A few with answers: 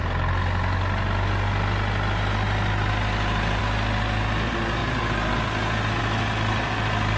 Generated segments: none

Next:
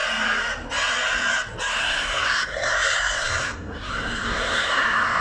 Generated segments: 1.8-5.2

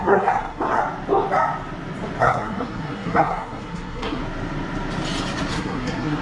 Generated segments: 0.0-0.8; 2.2-4.2; 5.5-6.2

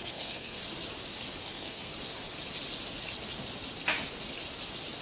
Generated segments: 0.0-0.6; 1.4-1.9

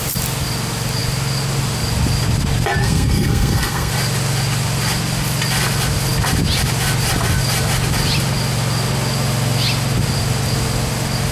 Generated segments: 2.8-3.9